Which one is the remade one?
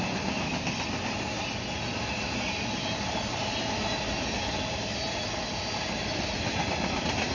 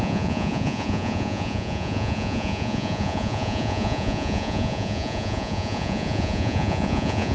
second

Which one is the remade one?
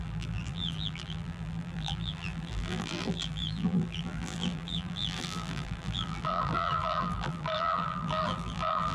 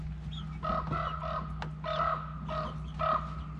first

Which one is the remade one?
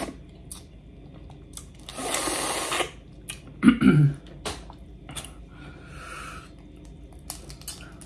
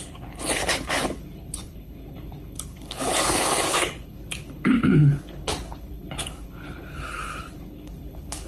second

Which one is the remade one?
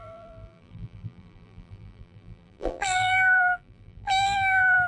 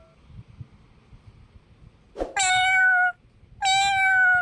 first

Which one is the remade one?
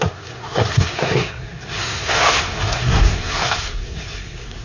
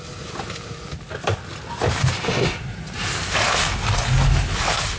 first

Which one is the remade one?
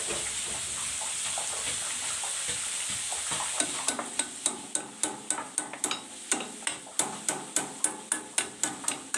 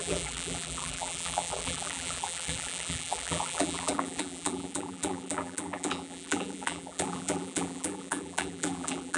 second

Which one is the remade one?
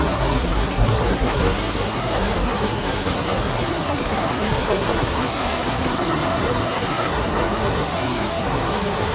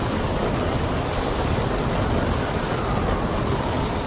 first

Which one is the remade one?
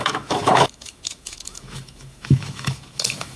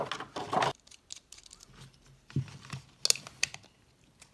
first